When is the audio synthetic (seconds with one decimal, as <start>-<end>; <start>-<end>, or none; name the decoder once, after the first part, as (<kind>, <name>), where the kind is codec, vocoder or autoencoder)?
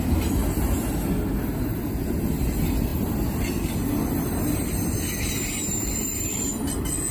none